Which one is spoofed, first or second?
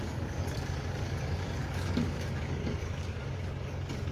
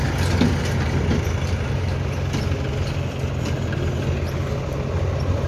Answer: first